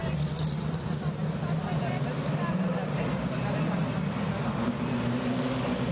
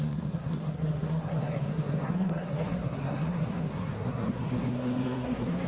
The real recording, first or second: first